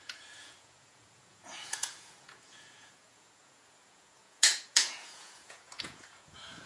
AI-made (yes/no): yes